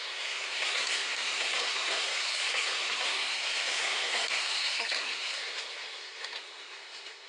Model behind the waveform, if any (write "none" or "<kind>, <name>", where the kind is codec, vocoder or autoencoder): codec, SNAC